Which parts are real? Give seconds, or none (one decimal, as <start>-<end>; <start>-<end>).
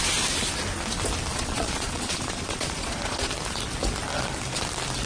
0.0-1.3; 3.3-5.1